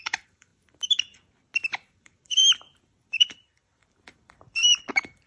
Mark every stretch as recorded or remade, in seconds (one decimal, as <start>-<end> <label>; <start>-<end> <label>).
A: 0.0-0.5 remade; 0.5-2.0 recorded; 2.0-2.4 remade; 2.4-3.1 recorded; 3.1-5.3 remade